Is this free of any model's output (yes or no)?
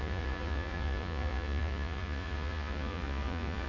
no